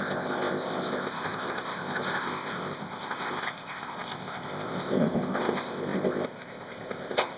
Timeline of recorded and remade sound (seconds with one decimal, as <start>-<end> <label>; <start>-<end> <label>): 0.0-7.4 remade